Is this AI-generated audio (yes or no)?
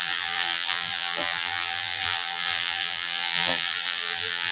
yes